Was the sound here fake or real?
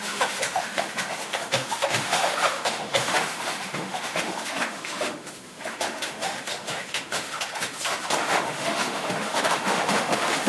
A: fake